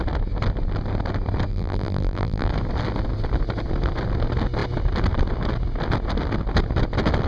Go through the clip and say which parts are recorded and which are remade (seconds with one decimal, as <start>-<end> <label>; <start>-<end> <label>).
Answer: 0.0-1.5 recorded; 1.5-2.5 remade; 2.5-7.3 recorded